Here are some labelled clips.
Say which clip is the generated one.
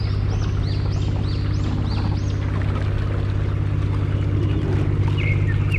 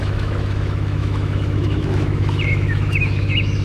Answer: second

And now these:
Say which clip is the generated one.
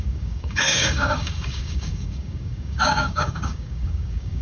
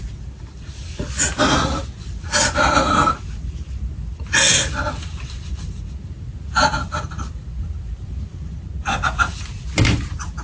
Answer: first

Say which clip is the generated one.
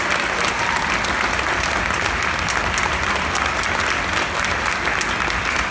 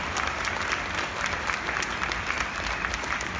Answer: second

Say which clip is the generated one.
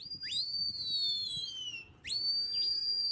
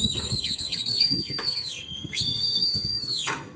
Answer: second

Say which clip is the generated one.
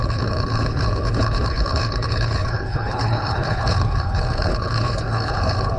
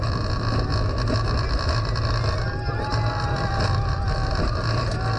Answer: first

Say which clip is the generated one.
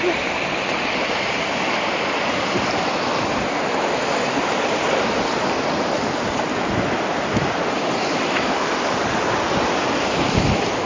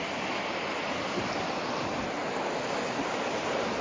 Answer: first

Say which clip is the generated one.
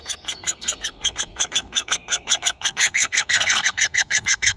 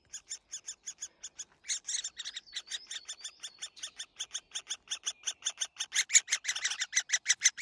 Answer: first